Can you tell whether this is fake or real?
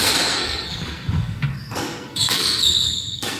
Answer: fake